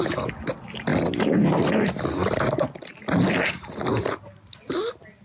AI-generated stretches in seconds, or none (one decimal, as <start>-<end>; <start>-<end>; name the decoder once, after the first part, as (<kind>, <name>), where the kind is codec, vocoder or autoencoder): none